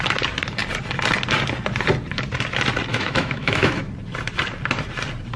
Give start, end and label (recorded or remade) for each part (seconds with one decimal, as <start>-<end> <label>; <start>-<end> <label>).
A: 0.0-2.9 recorded; 2.9-3.9 remade; 3.9-5.4 recorded